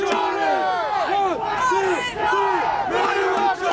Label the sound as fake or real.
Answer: real